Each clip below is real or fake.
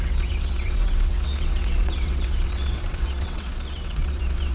fake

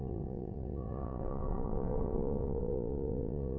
fake